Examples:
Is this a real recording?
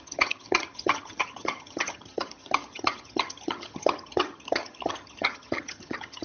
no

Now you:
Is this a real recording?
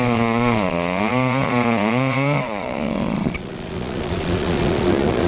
no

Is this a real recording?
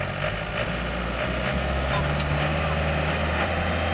yes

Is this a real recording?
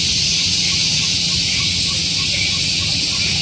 no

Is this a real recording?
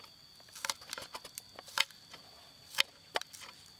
yes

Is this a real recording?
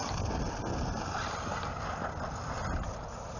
yes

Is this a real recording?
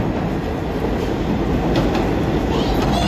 yes